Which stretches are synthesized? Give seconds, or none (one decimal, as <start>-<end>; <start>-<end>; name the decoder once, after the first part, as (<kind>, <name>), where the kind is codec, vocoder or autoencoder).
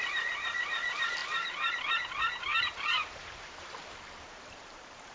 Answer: 0.0-5.1 (vocoder, BigVGAN v2)